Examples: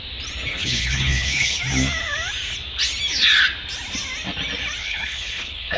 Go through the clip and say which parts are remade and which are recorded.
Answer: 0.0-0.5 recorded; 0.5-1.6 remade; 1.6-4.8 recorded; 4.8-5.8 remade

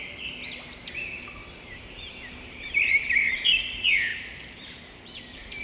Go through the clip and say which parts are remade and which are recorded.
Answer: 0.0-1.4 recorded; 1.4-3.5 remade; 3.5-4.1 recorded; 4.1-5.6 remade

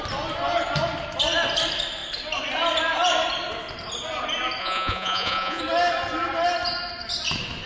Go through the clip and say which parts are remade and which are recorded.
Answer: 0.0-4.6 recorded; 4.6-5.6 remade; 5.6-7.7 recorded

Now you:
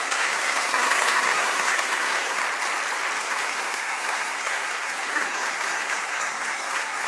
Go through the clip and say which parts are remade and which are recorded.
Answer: 0.0-2.4 remade; 2.4-3.2 recorded; 3.2-7.1 remade

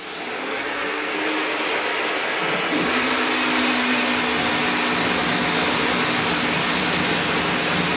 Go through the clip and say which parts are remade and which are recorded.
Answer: 0.0-0.5 recorded; 0.5-1.2 remade; 1.2-8.0 recorded